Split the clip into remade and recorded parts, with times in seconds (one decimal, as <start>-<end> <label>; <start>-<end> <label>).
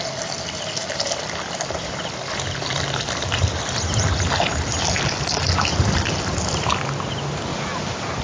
0.0-0.8 recorded; 0.8-2.8 remade; 2.8-7.5 recorded; 7.5-8.2 remade